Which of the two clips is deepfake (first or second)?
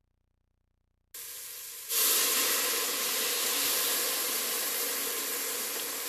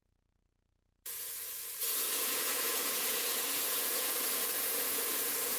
second